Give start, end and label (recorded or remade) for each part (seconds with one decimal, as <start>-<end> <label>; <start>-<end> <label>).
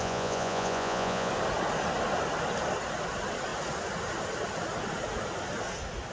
0.0-1.3 remade; 1.3-6.1 recorded